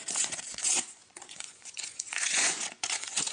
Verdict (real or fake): fake